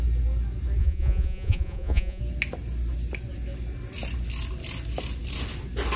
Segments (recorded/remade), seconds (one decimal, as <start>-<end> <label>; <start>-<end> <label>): 0.0-0.8 recorded; 0.8-2.2 remade; 2.2-6.0 recorded